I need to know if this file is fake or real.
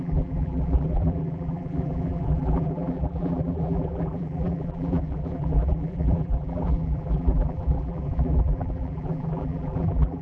fake